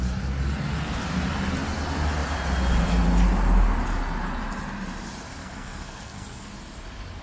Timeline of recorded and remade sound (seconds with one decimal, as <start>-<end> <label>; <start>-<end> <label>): 0.0-5.4 recorded; 5.4-6.5 remade; 6.5-7.2 recorded